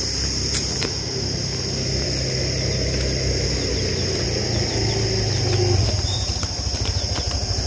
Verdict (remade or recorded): recorded